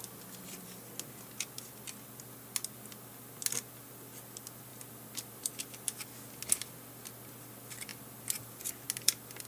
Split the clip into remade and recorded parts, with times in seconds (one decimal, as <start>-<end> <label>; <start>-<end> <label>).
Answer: 0.0-4.7 recorded; 4.7-5.5 remade; 5.5-7.9 recorded; 7.9-8.7 remade; 8.7-9.5 recorded

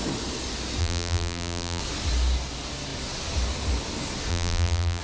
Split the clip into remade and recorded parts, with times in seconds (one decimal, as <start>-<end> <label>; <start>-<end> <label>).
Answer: 0.0-0.8 recorded; 0.8-1.8 remade; 1.8-4.3 recorded; 4.3-5.0 remade

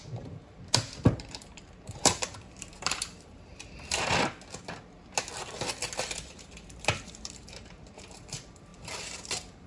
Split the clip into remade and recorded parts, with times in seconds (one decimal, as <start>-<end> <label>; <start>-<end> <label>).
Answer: 0.0-3.5 remade; 3.5-6.3 recorded; 6.3-9.7 remade

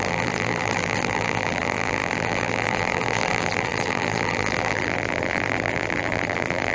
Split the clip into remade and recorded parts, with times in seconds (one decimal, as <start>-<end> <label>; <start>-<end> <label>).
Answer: 0.0-6.7 remade

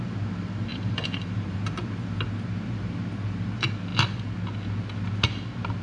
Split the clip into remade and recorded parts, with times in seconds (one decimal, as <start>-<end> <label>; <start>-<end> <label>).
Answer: 0.0-0.7 recorded; 0.7-1.6 remade; 1.6-5.8 recorded

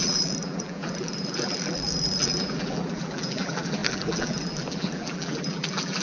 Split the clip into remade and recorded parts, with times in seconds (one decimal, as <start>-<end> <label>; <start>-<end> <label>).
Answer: 0.0-6.0 remade

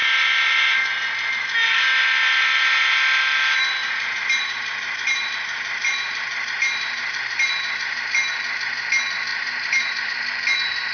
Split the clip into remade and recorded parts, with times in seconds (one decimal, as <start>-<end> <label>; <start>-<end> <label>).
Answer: 0.0-3.8 recorded; 3.8-8.0 remade; 8.0-9.3 recorded; 9.3-10.1 remade; 10.1-10.9 recorded